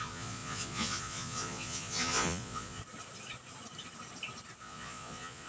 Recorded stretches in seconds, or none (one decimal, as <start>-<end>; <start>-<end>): 2.8-4.6